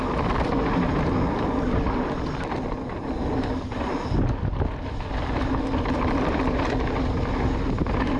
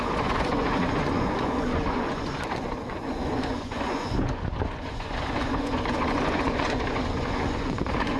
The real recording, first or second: first